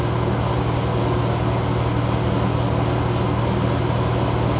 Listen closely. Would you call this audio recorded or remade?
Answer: recorded